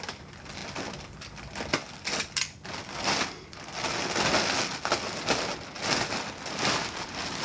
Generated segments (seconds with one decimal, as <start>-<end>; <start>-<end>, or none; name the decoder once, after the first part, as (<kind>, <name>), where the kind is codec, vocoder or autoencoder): none